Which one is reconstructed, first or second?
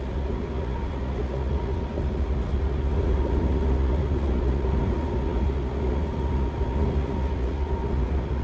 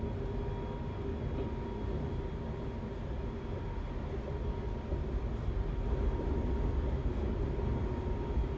first